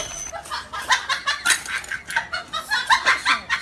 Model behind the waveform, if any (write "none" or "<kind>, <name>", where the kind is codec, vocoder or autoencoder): none